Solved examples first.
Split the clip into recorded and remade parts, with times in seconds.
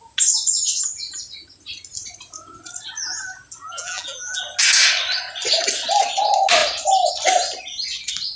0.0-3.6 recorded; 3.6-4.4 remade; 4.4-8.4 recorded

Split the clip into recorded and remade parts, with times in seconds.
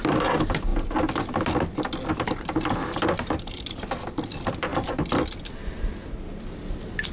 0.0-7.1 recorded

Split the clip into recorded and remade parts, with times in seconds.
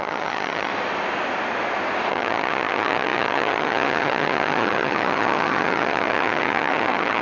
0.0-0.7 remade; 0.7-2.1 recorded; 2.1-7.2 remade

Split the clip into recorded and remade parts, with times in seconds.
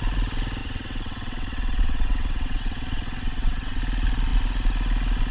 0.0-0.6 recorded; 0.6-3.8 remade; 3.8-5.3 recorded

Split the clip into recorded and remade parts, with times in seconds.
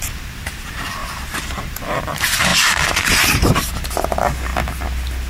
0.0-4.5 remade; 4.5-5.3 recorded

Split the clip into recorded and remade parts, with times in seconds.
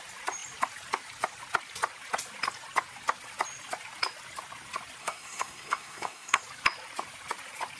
0.0-5.0 recorded; 5.0-6.4 remade; 6.4-7.8 recorded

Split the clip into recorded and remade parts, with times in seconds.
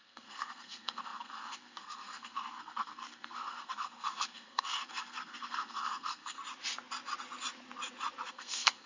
0.0-6.4 remade; 6.4-8.3 recorded; 8.3-8.9 remade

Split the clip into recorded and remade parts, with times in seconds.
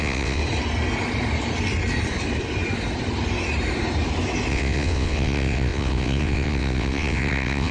0.0-0.4 remade; 0.4-4.5 recorded; 4.5-7.7 remade